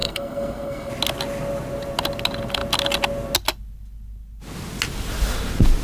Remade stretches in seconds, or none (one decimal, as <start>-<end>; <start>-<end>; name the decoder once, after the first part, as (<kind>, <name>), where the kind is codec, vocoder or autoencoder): 0.0-0.9 (codec, SNAC)